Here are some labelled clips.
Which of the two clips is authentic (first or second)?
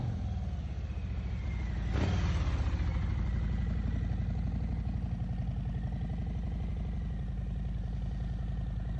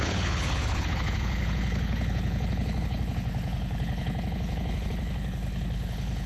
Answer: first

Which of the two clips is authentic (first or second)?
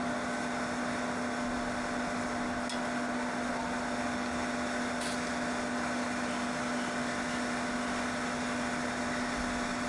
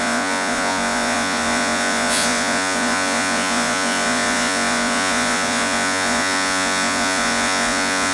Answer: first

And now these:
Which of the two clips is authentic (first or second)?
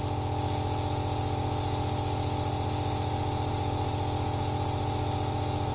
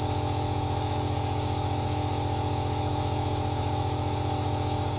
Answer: first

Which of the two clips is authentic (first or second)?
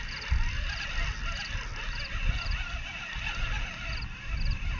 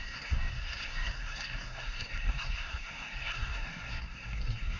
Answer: first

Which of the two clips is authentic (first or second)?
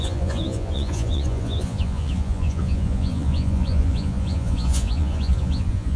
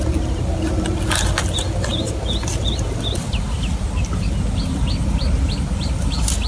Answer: second